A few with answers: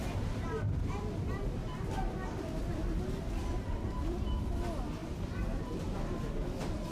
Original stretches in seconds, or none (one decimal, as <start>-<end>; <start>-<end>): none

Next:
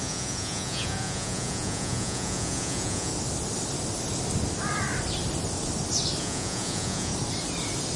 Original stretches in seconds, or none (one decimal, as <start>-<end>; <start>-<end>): 3.1-6.2; 7.1-8.0

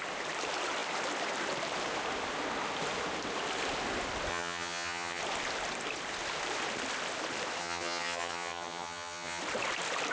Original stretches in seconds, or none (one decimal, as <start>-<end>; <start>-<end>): 0.0-4.3; 5.2-7.6; 9.4-10.1